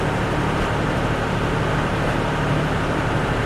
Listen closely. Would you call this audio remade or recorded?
recorded